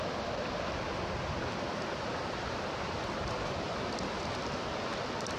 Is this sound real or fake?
real